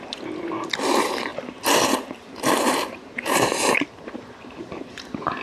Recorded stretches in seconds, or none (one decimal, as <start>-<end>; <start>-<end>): 0.0-1.3; 3.7-5.4